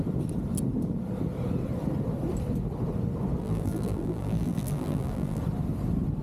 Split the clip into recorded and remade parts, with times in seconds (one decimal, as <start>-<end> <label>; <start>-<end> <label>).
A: 0.0-3.4 recorded; 3.4-5.4 remade; 5.4-6.2 recorded